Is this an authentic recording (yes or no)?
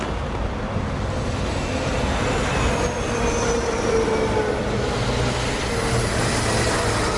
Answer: yes